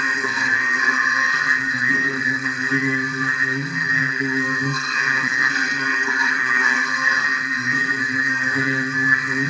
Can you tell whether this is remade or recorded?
remade